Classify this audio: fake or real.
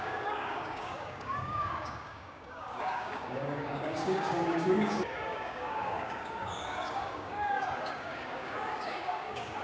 fake